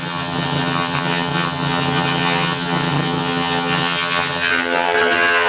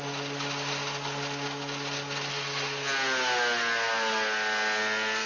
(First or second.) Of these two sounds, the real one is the second